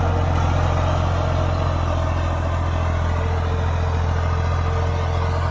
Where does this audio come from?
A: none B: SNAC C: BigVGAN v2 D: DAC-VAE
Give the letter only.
A